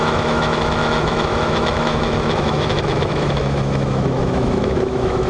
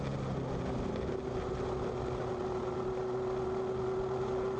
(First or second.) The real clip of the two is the second